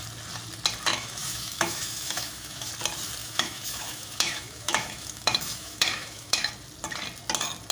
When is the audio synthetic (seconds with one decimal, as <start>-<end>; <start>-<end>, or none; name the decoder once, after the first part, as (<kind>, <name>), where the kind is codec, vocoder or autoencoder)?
0.9-2.7 (autoencoder, DAC-VAE); 3.2-6.5